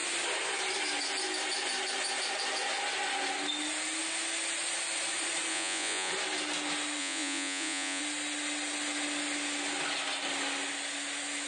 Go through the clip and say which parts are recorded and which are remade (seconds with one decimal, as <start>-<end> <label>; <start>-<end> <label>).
0.0-5.5 recorded; 5.5-6.1 remade; 6.1-7.0 recorded; 7.0-8.0 remade; 8.0-11.5 recorded